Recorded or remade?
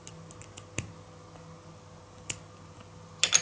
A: recorded